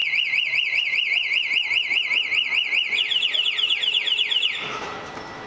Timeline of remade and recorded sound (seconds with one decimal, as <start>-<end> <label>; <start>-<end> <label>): 0.0-1.1 remade; 1.1-5.5 recorded